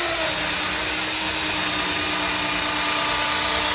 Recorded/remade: recorded